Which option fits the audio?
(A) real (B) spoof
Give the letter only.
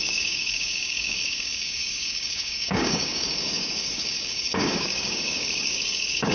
B